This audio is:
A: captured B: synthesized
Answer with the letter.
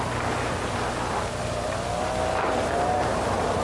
A